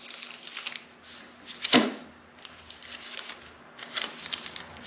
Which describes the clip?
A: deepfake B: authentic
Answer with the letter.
B